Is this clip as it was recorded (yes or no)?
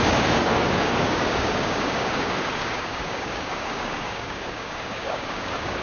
no